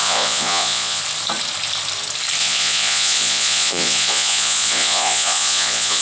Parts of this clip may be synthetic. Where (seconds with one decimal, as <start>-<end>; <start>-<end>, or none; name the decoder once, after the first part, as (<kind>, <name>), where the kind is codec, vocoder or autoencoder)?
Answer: 0.0-1.0 (vocoder, Vocos); 2.4-6.0